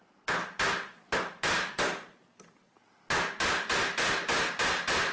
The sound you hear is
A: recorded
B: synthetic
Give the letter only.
A